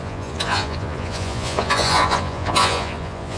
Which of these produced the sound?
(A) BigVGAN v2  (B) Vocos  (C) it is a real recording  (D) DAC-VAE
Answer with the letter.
B